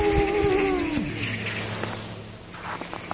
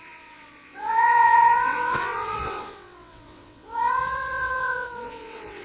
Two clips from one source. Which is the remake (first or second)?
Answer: second